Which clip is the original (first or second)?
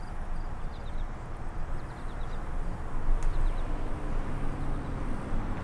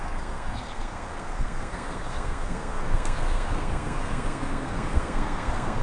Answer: first